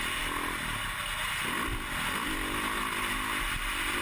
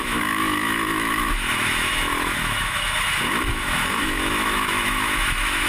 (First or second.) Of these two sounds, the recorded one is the first